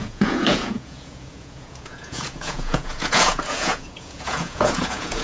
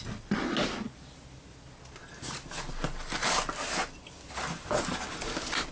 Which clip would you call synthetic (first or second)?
first